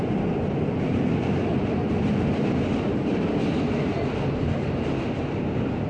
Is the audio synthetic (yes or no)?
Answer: no